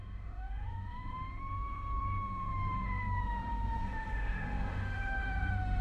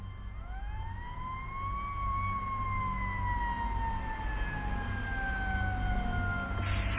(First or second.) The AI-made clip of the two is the first